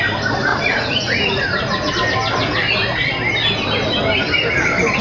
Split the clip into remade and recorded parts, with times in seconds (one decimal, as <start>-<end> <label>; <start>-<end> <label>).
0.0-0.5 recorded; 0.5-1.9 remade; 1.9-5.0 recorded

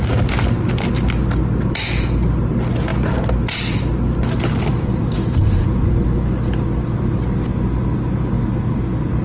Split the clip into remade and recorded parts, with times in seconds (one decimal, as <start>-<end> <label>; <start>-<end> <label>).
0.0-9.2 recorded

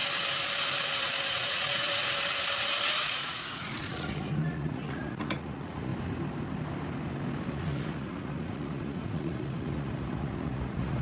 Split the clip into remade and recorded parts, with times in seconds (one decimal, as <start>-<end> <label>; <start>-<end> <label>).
0.0-1.3 recorded; 1.3-2.0 remade; 2.0-3.0 recorded; 3.0-5.9 remade; 5.9-7.5 recorded; 7.5-11.0 remade

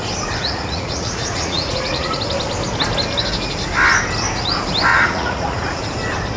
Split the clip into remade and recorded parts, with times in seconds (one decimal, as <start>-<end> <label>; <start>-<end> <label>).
0.0-0.4 recorded; 0.4-2.2 remade; 2.2-4.9 recorded; 4.9-5.8 remade; 5.8-6.4 recorded